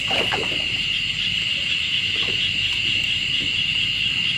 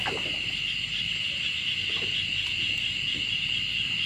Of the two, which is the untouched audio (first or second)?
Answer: second